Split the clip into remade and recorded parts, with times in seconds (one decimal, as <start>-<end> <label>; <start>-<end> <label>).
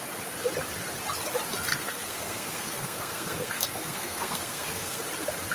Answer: 0.0-1.7 recorded; 1.7-5.0 remade; 5.0-5.5 recorded